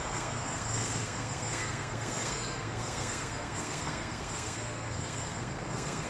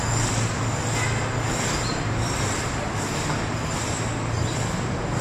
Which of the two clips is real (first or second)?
second